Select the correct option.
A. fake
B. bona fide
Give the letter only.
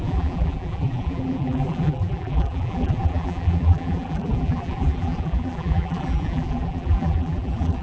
A